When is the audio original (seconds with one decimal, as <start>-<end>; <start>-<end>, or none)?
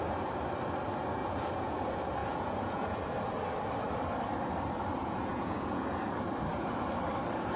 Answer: 0.0-1.2; 1.8-2.2; 3.0-5.0; 6.0-7.6